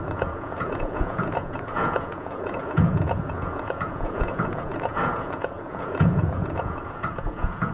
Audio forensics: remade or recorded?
remade